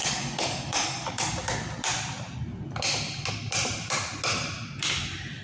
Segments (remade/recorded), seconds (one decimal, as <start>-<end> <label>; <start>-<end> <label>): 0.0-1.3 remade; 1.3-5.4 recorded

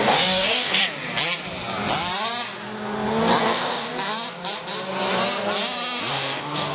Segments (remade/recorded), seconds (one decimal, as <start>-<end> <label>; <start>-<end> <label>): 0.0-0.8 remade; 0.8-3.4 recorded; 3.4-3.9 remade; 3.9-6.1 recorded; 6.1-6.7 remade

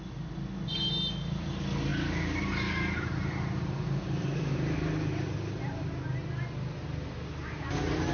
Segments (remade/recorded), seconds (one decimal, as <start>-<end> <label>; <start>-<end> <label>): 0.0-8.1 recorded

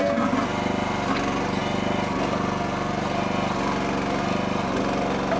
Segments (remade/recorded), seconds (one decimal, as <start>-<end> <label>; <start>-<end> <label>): 0.0-5.4 recorded